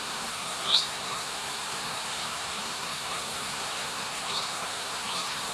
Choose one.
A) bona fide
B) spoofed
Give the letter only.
B